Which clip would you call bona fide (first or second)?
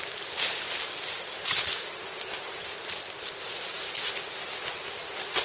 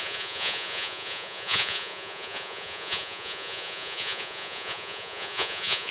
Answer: first